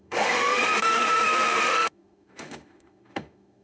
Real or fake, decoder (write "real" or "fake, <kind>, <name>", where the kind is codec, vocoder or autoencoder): fake, autoencoder, DAC-VAE